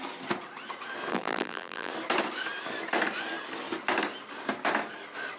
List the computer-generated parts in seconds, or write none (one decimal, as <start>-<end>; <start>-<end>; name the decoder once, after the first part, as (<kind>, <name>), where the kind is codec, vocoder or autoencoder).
1.1-1.9 (vocoder, BigVGAN v2)

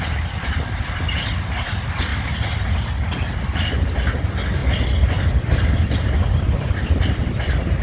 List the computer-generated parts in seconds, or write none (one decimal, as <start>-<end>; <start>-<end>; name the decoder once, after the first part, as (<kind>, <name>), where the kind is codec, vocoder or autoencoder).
none

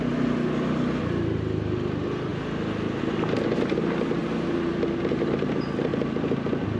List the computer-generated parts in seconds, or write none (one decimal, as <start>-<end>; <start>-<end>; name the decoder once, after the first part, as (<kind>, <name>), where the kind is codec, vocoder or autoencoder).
4.2-5.5 (vocoder, BigVGAN v2)

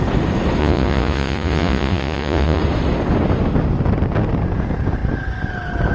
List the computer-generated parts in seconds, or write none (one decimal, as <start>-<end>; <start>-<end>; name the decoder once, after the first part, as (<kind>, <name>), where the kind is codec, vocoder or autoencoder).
0.6-2.6 (vocoder, Vocos)

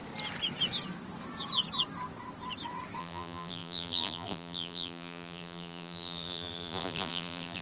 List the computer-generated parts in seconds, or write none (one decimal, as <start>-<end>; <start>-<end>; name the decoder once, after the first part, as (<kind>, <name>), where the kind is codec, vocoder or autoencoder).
3.0-7.6 (vocoder, BigVGAN v2)

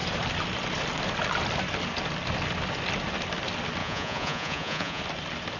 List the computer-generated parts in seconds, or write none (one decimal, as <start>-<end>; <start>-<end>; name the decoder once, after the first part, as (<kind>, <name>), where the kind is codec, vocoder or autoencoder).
3.8-5.0 (vocoder, Vocos)